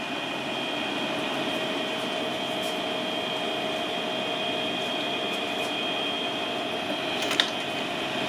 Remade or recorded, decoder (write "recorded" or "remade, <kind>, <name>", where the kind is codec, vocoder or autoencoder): recorded